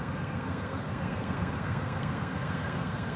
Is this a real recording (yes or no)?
no